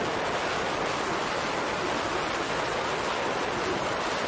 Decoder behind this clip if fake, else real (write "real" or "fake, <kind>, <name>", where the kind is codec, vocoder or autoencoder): real